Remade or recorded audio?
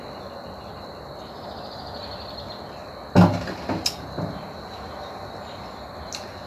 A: recorded